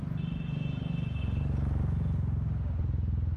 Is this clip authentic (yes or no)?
yes